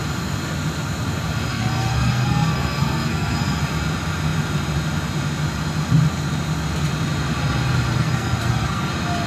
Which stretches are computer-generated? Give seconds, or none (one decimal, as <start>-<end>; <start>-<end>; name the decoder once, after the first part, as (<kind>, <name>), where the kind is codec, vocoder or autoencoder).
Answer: 1.5-3.6 (codec, SNAC); 7.9-8.9